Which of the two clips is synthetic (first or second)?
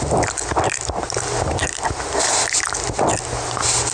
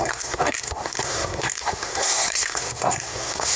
second